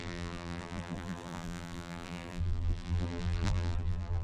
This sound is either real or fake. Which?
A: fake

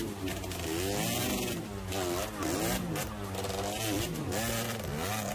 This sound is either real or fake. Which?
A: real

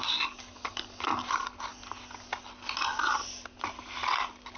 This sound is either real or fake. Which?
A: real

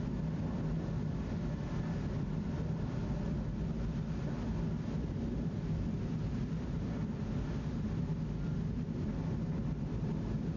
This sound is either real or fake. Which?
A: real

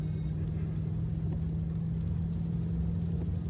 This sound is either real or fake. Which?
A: real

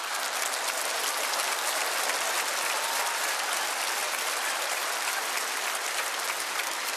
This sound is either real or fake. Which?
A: real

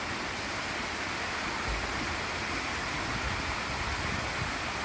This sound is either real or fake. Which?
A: real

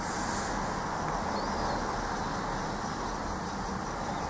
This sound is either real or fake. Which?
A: real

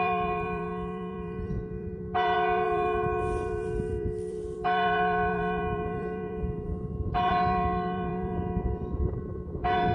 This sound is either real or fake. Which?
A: fake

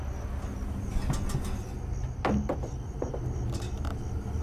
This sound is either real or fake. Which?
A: real